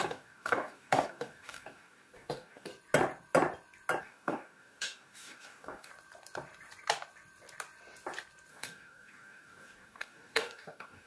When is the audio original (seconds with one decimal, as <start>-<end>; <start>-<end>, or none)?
2.7-4.0; 5.9-8.5